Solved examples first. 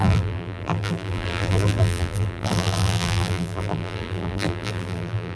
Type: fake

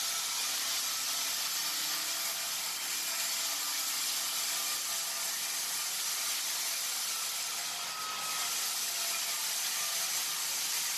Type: real